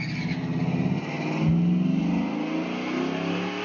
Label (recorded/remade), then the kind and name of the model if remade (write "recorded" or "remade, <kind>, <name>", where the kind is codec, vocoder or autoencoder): recorded